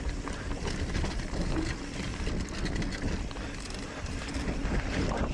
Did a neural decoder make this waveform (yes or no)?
no